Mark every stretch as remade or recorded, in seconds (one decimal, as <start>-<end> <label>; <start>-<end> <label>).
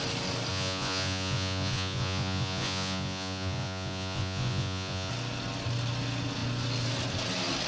0.0-0.5 recorded; 0.5-5.1 remade; 5.1-7.7 recorded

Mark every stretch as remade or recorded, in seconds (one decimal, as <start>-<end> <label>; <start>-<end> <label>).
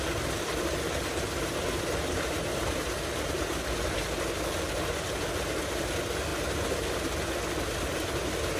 0.0-8.6 recorded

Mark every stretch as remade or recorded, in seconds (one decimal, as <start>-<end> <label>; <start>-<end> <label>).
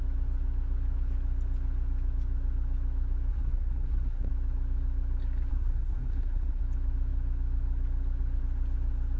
0.0-3.3 recorded; 3.3-4.3 remade; 4.3-5.5 recorded; 5.5-6.6 remade; 6.6-9.2 recorded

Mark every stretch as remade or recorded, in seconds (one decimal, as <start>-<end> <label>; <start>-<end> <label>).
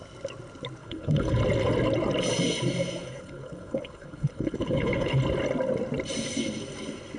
0.0-0.8 recorded; 0.8-1.4 remade; 1.4-3.0 recorded; 3.0-5.2 remade; 5.2-7.2 recorded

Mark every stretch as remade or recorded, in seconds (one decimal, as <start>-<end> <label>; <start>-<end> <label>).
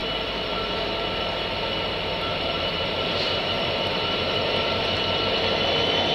0.0-0.5 remade; 0.5-2.3 recorded; 2.3-5.0 remade; 5.0-6.1 recorded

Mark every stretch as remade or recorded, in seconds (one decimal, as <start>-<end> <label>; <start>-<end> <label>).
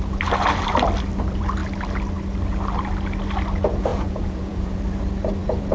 0.0-3.9 recorded; 3.9-4.8 remade; 4.8-5.7 recorded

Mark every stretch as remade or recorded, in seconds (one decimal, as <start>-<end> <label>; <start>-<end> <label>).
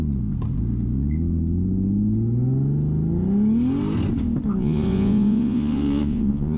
0.0-4.6 recorded; 4.6-6.6 remade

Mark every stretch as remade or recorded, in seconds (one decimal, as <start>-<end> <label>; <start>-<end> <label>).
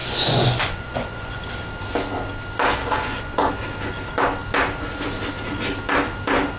0.0-1.4 remade; 1.4-2.8 recorded; 2.8-3.5 remade; 3.5-6.6 recorded